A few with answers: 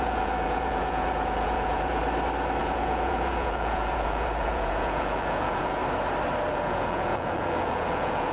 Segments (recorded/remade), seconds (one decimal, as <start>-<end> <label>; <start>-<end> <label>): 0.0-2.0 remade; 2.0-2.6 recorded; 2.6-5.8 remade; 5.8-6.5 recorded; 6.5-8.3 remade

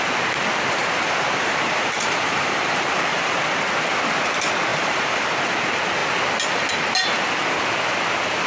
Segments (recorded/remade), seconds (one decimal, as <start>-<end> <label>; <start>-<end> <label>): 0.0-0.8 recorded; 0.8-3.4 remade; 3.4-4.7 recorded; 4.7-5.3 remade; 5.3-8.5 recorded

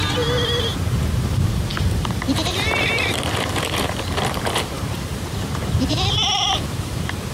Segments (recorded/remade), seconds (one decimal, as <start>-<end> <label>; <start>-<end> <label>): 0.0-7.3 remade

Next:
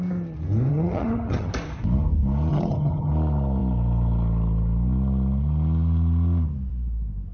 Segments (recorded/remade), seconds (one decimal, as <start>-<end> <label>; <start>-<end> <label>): 0.0-0.7 recorded; 0.7-1.5 remade; 1.5-2.5 recorded; 2.5-3.1 remade; 3.1-7.3 recorded

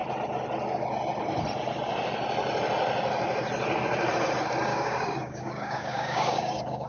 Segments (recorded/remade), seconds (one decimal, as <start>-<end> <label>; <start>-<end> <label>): 0.0-4.7 recorded; 4.7-6.9 remade